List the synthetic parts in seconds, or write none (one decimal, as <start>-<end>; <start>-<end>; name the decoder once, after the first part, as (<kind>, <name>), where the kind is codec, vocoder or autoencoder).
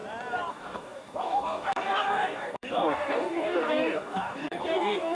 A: 0.5-5.1 (codec, DAC)